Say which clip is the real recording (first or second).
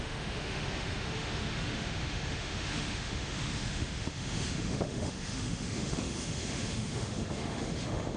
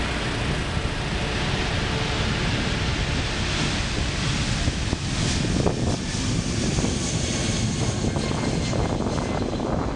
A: second